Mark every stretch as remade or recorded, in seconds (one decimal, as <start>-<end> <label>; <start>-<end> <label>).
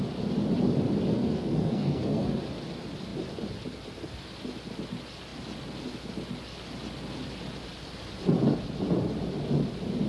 0.0-1.1 recorded; 1.1-2.4 remade; 2.4-10.1 recorded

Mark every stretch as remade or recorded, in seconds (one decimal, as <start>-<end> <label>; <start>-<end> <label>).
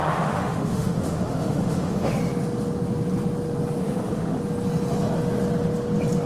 0.0-2.2 remade; 2.2-3.8 recorded; 3.8-4.4 remade; 4.4-6.3 recorded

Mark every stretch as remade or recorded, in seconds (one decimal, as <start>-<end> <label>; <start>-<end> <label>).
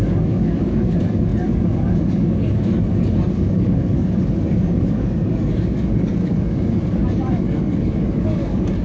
0.0-8.8 remade